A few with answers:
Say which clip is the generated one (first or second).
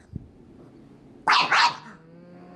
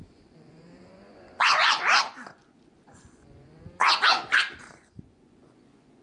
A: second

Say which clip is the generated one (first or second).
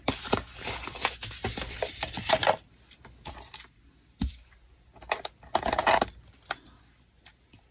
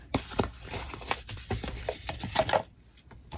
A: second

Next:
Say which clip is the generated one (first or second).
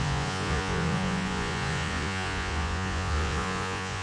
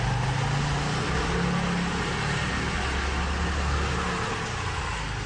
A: first